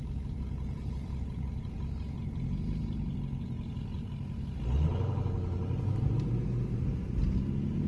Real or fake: real